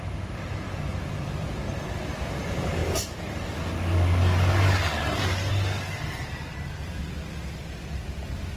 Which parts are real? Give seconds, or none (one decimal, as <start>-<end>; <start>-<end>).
0.0-0.9; 1.7-7.0